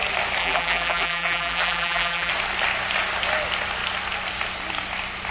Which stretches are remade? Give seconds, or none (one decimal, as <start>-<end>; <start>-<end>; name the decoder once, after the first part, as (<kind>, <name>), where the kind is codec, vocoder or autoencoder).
0.4-2.3 (vocoder, BigVGAN v2)